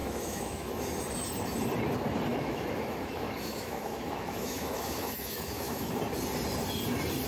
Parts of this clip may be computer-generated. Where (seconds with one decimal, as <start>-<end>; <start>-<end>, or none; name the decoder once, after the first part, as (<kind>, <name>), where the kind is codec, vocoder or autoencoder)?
0.0-0.8 (autoencoder, DAC-VAE); 2.3-5.9